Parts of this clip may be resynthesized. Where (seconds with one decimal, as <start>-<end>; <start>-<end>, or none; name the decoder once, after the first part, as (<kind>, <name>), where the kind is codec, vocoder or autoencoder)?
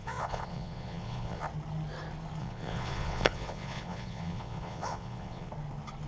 0.0-1.4 (vocoder, Vocos); 2.4-5.5